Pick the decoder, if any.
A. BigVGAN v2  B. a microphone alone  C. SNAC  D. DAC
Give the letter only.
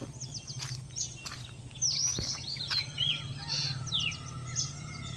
B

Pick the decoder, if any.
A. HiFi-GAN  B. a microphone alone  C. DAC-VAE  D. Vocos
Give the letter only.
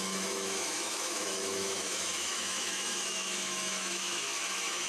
C